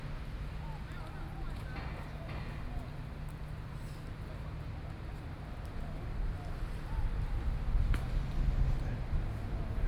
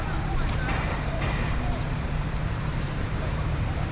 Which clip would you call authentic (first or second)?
first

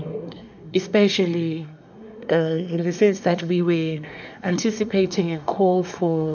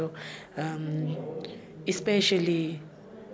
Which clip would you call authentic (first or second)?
second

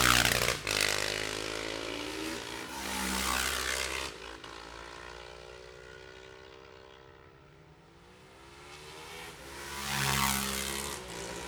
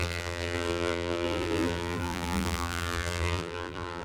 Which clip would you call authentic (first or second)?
first